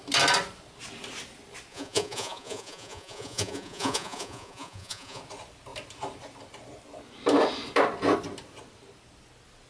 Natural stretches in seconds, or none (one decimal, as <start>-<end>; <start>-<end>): 0.0-1.7; 5.2-9.7

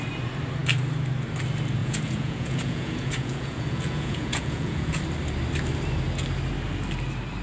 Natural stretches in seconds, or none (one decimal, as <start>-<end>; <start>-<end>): 0.0-1.8; 5.0-7.4

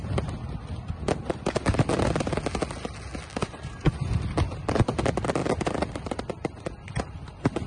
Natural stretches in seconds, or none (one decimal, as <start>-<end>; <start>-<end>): 0.0-3.4; 4.1-7.7

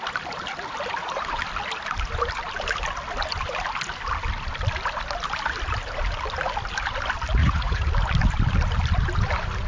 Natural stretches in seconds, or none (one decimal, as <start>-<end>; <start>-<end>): 0.0-7.4; 7.9-9.7

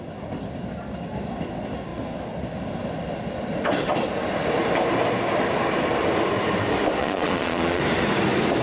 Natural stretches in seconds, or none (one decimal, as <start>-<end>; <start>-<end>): 0.0-7.0; 7.8-8.6